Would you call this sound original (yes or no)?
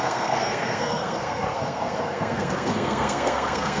no